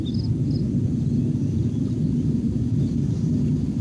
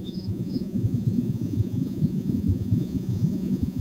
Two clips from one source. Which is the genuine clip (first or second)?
first